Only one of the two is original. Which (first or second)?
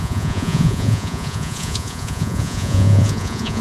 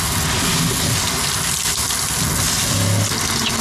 second